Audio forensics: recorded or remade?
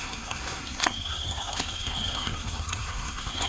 remade